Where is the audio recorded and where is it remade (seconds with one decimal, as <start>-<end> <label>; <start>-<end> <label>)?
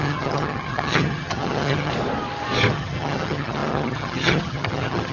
0.0-1.9 remade; 1.9-2.7 recorded; 2.7-5.1 remade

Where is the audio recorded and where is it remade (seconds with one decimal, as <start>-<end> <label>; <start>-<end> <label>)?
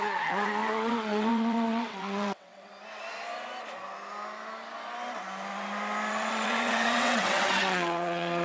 0.0-2.7 remade; 2.7-6.1 recorded; 6.1-8.4 remade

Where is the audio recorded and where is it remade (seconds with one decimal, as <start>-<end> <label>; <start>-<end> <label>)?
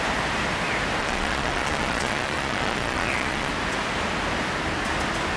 0.0-1.0 recorded; 1.0-3.5 remade; 3.5-5.4 recorded